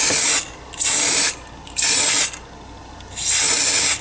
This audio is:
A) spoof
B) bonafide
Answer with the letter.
B